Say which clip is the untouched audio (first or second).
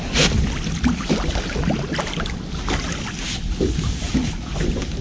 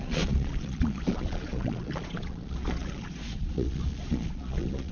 first